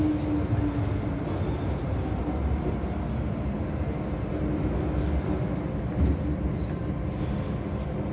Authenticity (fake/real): real